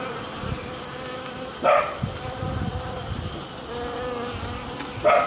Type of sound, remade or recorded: recorded